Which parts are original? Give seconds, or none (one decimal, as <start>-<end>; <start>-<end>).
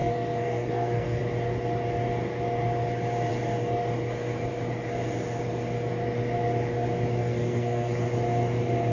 1.2-7.2; 8.0-8.9